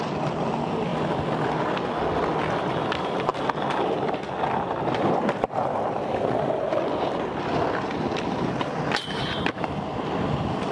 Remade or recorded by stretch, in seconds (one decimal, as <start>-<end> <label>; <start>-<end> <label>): 0.0-10.7 recorded